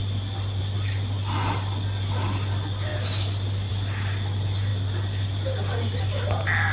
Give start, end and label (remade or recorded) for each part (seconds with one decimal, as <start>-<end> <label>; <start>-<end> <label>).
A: 0.0-6.7 recorded